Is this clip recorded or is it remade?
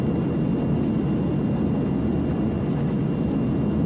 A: recorded